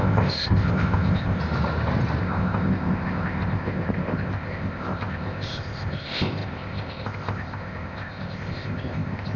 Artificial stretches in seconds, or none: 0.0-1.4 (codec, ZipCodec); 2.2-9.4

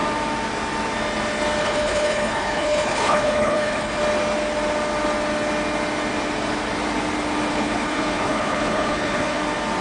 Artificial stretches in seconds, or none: 1.6-4.0 (codec, HILCodec); 7.5-9.4

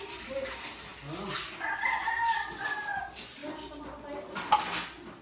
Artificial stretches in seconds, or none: 2.4-3.0 (codec, DAC)

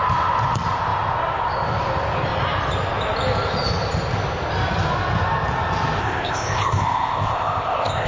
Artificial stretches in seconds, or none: 6.0-8.1 (codec, ZipCodec)

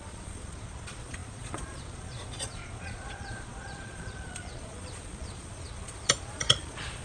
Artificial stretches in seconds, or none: 0.0-7.0 (vocoder, Vocos)

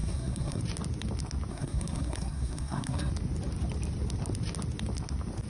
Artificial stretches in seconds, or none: 0.0-0.6 (codec, SNAC); 1.5-3.1

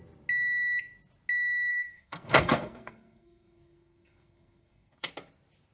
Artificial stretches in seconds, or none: 1.7-5.1 (codec, SNAC)

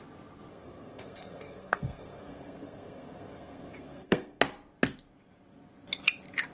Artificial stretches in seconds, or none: 0.5-4.4 (codec, SNAC)